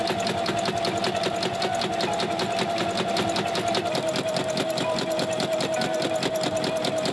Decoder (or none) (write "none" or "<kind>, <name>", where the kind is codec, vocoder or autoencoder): none